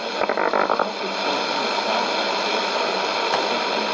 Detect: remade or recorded recorded